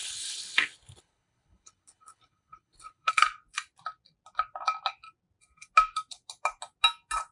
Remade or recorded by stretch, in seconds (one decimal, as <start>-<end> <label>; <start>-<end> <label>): 0.0-3.1 remade; 3.1-7.3 recorded